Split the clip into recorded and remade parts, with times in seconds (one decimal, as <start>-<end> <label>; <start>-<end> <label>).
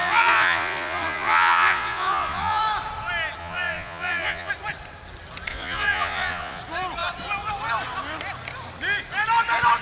0.0-2.6 remade; 2.6-3.4 recorded; 3.4-4.5 remade; 4.5-5.5 recorded; 5.5-6.6 remade; 6.6-9.8 recorded